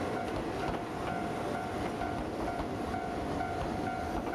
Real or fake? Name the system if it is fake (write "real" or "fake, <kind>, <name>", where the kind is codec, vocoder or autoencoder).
real